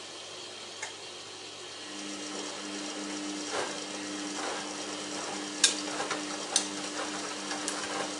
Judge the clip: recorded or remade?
recorded